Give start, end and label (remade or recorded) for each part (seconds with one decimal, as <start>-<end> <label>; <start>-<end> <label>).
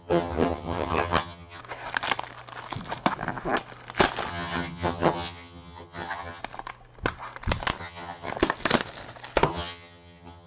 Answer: 0.0-1.6 remade; 1.6-4.3 recorded; 4.3-6.4 remade; 6.4-7.8 recorded; 7.8-8.3 remade; 8.3-9.5 recorded; 9.5-10.5 remade